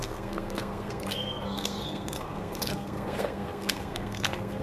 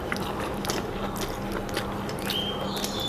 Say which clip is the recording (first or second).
second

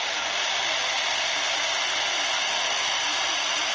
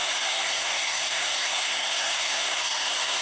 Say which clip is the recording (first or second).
first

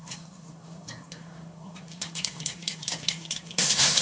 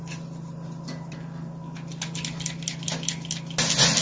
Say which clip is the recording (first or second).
second